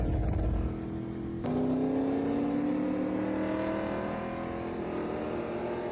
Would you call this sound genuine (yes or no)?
yes